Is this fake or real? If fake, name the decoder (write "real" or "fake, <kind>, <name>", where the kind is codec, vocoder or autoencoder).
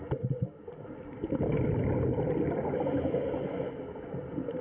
real